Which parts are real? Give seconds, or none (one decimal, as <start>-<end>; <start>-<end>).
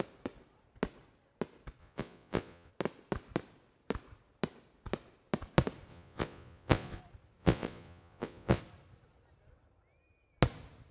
0.0-1.8; 2.7-5.9; 7.0-7.4; 8.6-10.9